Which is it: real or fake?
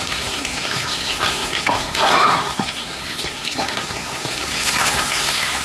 fake